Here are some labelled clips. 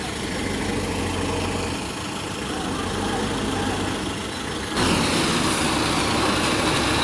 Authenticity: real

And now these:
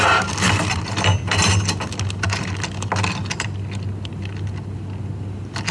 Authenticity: real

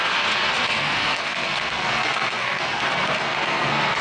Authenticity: fake